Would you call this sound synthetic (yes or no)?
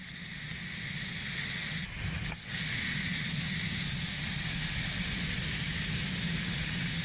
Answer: no